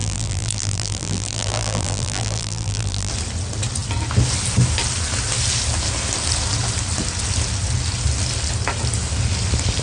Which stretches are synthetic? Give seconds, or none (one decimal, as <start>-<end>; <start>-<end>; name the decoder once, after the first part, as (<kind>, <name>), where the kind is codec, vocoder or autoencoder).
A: 0.0-3.1 (vocoder, BigVGAN v2)